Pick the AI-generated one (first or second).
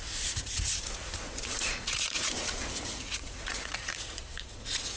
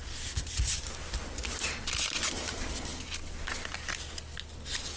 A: first